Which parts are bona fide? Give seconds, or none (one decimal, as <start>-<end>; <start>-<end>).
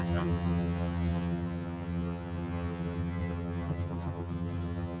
none